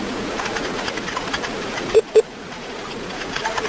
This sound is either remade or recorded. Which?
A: remade